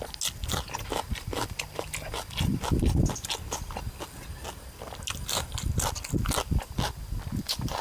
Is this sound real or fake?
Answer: real